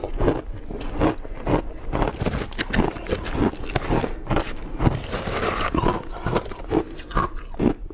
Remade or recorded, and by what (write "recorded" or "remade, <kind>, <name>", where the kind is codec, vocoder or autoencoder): recorded